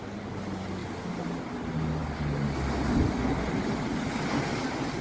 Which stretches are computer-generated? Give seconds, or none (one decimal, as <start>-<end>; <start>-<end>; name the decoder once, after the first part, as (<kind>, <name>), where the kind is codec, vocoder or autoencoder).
none